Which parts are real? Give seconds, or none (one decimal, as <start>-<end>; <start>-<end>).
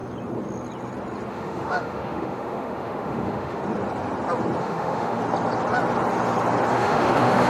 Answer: 0.0-1.3; 3.6-4.6; 5.2-6.7